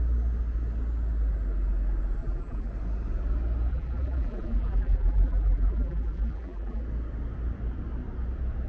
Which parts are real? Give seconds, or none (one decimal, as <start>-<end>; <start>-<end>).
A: 0.0-2.2; 2.7-3.7; 6.8-8.7